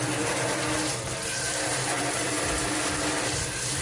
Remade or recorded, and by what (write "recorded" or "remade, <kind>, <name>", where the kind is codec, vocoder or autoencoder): recorded